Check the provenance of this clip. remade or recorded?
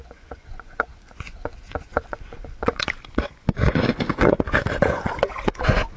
remade